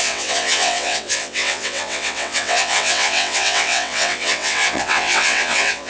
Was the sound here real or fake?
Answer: fake